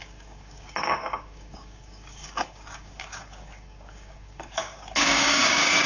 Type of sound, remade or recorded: remade